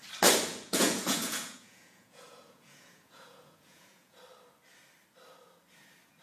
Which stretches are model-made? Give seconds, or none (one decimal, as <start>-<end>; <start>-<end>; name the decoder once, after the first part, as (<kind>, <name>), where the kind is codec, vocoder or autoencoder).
0.5-4.2 (vocoder, Vocos)